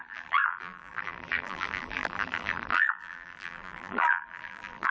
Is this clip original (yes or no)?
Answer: no